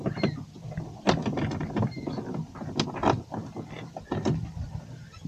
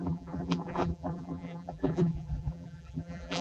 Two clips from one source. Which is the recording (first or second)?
first